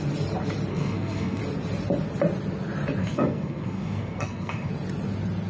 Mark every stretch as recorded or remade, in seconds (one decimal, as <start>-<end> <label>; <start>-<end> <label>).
0.0-0.7 recorded; 0.7-1.4 remade; 1.4-3.0 recorded; 3.0-4.7 remade; 4.7-5.5 recorded